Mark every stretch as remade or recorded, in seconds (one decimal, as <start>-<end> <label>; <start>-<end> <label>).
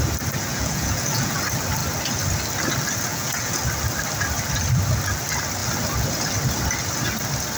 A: 0.0-0.5 recorded; 0.5-1.4 remade; 1.4-3.1 recorded; 3.1-3.6 remade; 3.6-7.6 recorded